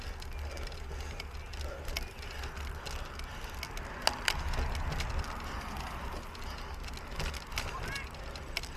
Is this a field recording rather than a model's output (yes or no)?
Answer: yes